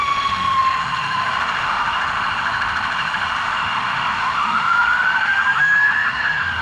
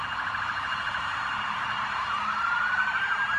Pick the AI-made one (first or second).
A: first